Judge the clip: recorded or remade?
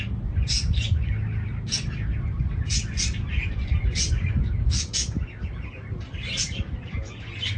recorded